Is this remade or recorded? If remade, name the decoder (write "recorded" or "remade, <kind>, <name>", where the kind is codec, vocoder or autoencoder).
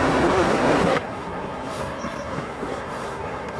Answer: remade, codec, SNAC